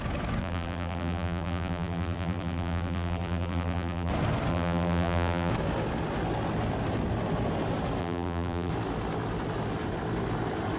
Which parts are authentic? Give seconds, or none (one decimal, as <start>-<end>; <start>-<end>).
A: 0.0-0.4; 4.1-4.5; 5.5-8.0; 8.7-10.8